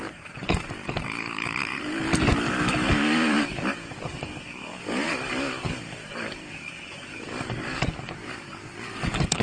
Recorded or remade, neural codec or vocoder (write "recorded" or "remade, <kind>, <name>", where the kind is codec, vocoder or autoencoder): remade, codec, DAC